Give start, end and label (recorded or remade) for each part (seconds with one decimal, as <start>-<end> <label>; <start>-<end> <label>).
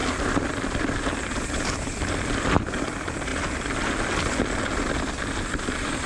0.0-6.1 recorded